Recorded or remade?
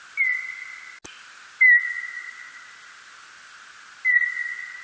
recorded